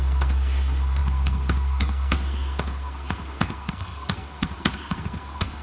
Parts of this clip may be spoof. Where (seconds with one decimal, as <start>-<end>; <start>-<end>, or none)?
0.0-5.6